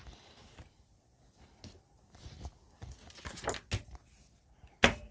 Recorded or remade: recorded